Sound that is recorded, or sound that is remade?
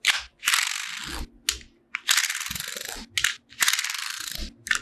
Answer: recorded